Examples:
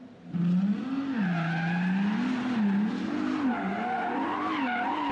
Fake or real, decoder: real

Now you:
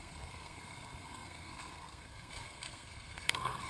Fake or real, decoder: fake, codec, SNAC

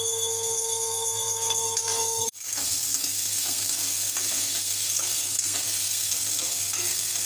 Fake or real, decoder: fake, codec, SNAC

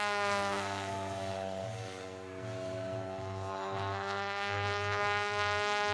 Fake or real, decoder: fake, codec, SNAC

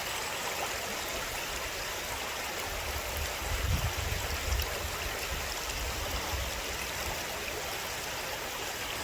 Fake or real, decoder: real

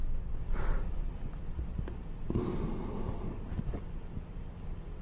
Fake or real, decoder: real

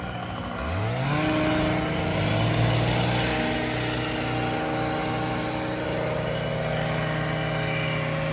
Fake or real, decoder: real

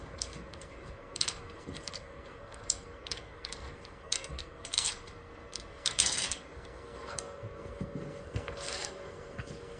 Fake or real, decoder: fake, codec, SNAC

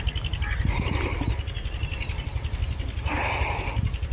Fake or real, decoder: real